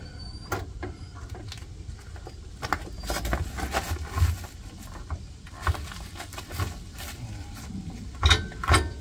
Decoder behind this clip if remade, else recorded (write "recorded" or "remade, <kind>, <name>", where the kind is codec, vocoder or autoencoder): recorded